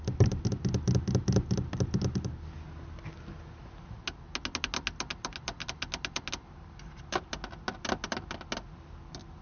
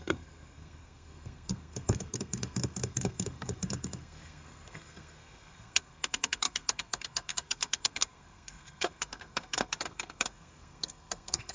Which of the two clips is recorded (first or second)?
first